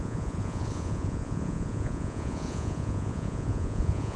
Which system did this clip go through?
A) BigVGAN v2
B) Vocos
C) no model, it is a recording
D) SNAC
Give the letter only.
B